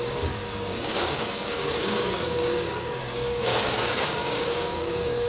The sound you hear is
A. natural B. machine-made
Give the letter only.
B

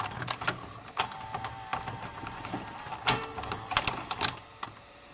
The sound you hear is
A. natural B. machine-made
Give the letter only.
A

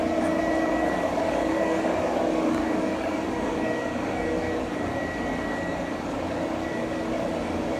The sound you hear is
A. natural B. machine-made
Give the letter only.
B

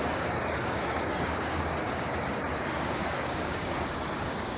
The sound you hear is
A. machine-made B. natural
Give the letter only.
A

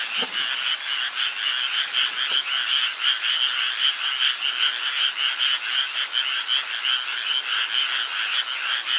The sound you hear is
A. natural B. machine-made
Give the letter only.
A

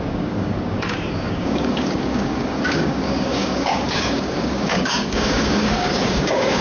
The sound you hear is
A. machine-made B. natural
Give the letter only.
A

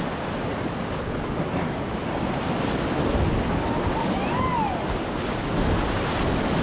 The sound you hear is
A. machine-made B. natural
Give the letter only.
B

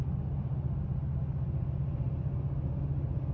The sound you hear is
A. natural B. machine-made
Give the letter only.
A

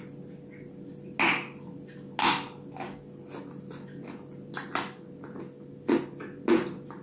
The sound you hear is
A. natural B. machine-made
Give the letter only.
A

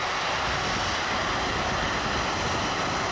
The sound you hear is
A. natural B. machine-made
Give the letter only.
A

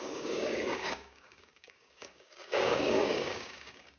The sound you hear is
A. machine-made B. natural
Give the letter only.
A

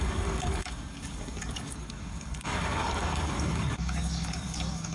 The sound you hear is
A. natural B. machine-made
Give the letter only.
B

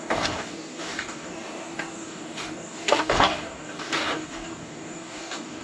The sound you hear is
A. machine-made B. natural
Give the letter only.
A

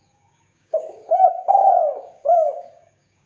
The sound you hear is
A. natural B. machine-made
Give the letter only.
B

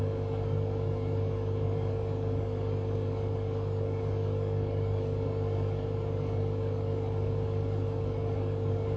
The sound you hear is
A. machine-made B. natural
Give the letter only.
A